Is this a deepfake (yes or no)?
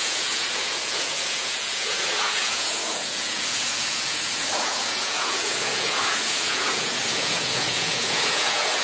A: yes